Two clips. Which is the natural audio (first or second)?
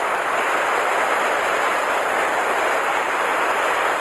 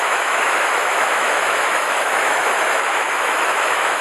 first